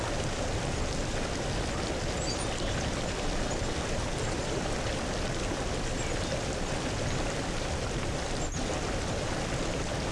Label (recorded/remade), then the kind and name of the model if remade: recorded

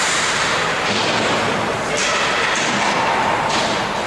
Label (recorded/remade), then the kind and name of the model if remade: recorded